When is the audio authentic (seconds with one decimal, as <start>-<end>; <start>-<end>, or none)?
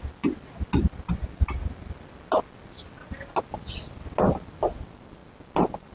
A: 0.0-5.9